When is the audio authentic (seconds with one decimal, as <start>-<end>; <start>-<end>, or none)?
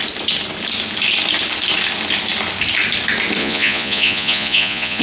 0.0-3.4